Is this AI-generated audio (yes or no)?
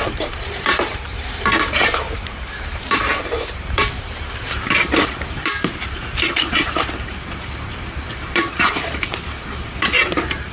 yes